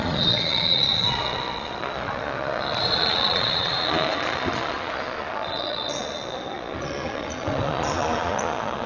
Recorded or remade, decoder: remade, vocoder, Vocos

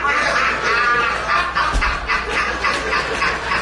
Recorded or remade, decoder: recorded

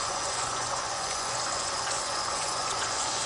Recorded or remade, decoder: remade, vocoder, Vocos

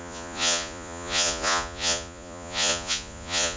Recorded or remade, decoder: remade, vocoder, Vocos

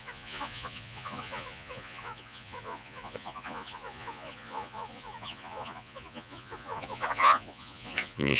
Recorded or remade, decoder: remade, vocoder, Vocos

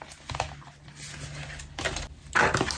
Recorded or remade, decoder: recorded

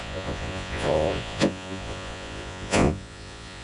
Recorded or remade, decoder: remade, vocoder, Vocos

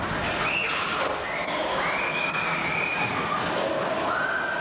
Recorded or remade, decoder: recorded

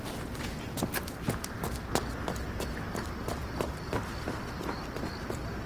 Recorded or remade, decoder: recorded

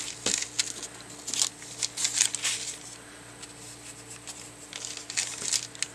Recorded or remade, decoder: recorded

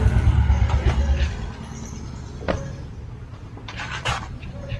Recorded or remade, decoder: recorded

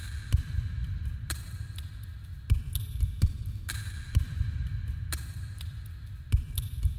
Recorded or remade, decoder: recorded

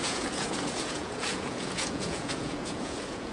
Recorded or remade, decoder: remade, vocoder, Vocos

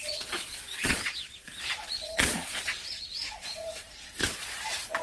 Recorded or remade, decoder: remade, vocoder, Vocos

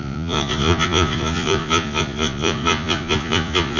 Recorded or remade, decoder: remade, vocoder, Vocos